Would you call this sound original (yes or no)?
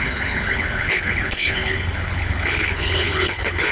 no